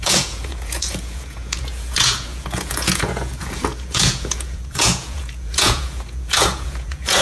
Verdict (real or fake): fake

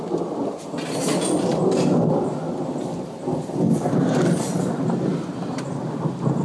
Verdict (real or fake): real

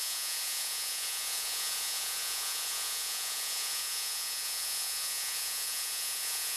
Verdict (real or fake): fake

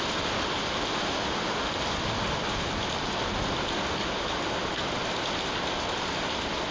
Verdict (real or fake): real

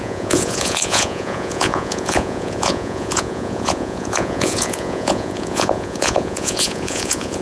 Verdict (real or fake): fake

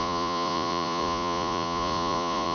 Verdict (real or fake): fake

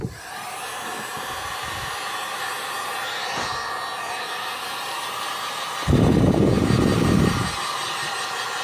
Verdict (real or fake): real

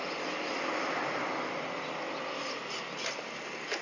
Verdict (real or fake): real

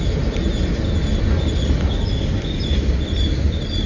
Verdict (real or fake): real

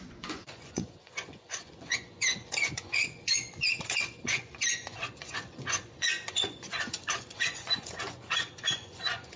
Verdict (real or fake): fake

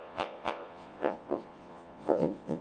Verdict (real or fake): fake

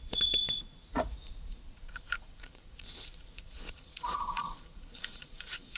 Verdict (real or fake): fake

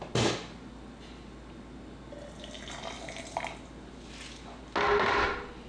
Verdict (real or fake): real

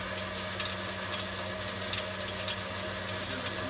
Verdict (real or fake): real